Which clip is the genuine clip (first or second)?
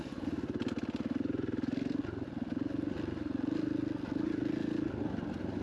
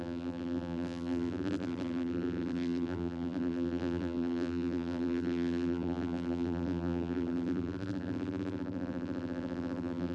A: first